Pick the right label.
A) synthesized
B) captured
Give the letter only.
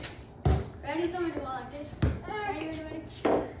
B